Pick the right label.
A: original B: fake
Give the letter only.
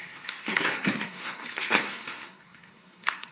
B